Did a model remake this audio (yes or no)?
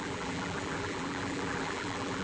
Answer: yes